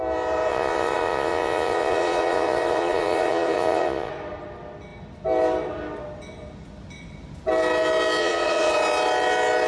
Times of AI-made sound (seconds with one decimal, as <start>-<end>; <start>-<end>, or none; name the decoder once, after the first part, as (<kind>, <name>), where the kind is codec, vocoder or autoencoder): 0.5-4.1 (vocoder, Vocos); 8.2-8.7